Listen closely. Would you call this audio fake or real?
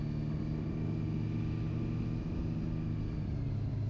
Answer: real